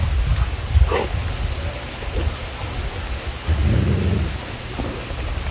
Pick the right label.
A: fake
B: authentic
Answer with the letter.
B